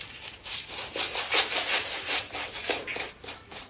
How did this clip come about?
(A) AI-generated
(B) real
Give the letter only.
B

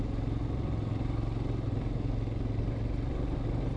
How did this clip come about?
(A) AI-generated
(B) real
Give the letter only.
B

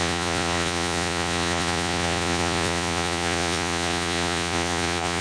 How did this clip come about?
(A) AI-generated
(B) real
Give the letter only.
A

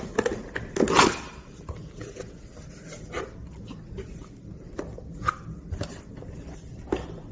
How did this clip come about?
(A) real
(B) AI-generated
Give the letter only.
A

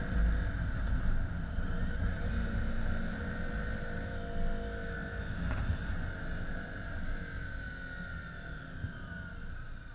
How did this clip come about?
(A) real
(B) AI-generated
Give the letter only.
A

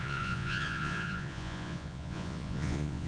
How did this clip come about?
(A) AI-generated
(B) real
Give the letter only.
A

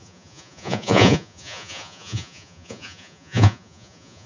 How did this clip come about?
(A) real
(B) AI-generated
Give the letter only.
B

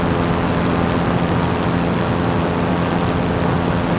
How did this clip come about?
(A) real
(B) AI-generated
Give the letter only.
A